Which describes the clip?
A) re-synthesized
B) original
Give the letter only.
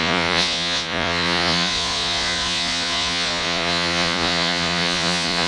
A